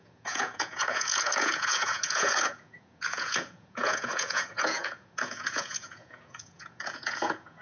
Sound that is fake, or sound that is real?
fake